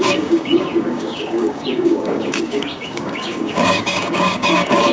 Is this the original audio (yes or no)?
no